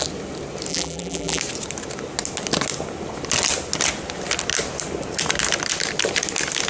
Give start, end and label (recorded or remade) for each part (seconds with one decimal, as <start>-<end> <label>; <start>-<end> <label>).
0.0-0.7 recorded; 0.7-1.4 remade; 1.4-6.7 recorded